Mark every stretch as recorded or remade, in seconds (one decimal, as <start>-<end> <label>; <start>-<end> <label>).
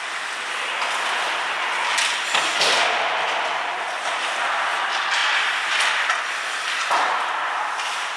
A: 0.0-8.2 recorded